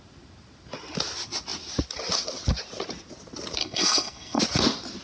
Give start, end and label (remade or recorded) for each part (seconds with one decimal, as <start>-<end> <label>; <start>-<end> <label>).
0.0-3.6 recorded; 3.6-4.4 remade; 4.4-5.0 recorded